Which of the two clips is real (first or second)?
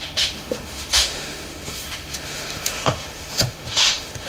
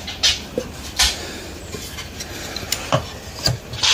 second